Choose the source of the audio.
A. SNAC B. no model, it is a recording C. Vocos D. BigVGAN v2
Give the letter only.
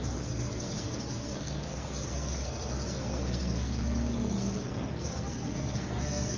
A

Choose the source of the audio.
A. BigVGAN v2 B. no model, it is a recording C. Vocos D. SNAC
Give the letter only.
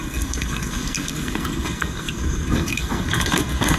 D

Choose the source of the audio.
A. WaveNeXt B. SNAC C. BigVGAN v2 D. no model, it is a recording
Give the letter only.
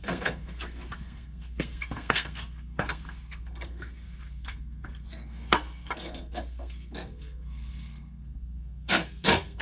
B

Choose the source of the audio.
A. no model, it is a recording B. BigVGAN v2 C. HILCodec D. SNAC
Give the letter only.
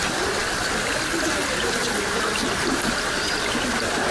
A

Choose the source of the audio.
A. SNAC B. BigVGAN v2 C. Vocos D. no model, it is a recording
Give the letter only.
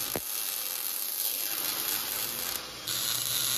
D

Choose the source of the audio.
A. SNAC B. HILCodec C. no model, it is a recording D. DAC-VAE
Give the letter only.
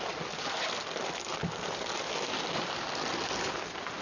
C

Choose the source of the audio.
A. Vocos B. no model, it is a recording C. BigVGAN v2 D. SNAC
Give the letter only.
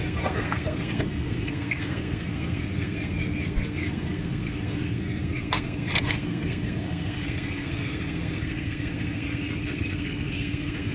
D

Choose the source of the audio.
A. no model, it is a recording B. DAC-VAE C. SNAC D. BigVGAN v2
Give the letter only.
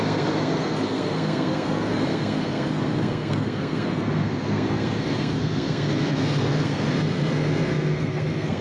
C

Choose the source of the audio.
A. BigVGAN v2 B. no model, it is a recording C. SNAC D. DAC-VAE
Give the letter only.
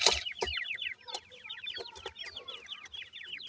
B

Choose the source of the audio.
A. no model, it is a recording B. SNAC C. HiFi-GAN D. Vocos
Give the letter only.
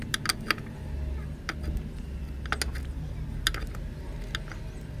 A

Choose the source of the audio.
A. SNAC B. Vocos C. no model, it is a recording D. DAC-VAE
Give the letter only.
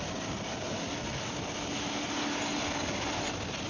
C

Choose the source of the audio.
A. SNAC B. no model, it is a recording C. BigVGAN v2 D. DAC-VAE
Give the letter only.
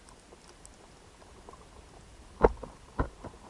B